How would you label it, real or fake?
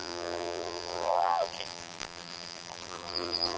fake